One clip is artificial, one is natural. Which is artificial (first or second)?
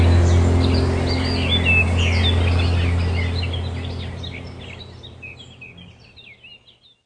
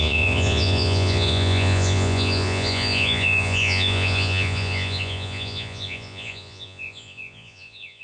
second